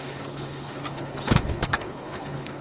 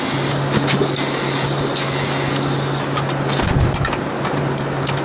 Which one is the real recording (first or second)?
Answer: second